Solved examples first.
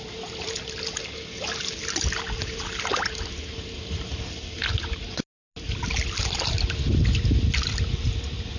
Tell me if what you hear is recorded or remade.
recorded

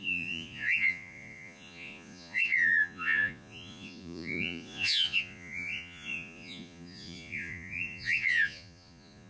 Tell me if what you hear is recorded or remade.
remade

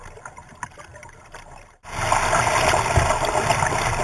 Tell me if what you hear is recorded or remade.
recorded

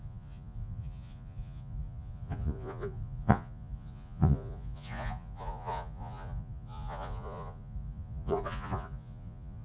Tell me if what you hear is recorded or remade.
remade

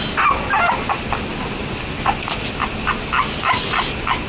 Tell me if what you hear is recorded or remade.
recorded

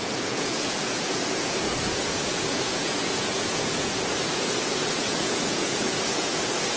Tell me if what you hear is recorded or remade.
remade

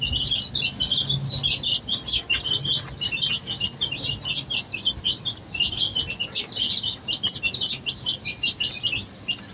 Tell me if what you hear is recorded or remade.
recorded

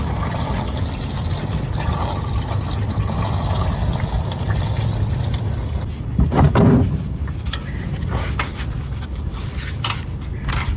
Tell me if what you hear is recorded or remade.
recorded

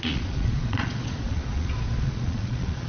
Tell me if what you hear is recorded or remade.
remade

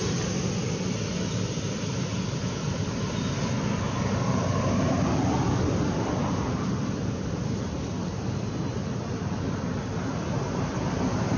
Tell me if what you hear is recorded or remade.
recorded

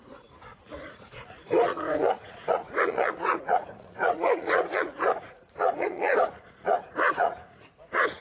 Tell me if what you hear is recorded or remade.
remade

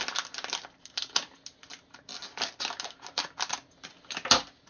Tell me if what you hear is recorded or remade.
recorded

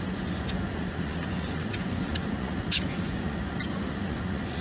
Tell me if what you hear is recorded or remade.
remade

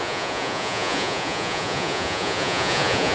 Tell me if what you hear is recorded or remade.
remade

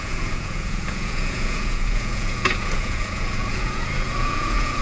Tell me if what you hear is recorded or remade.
remade